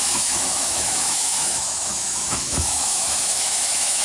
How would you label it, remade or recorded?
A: remade